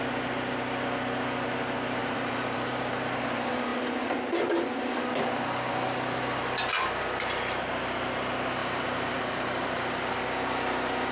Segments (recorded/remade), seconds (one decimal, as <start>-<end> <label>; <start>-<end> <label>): 0.0-2.0 recorded; 2.0-2.7 remade; 2.7-8.6 recorded; 8.6-9.8 remade; 9.8-11.1 recorded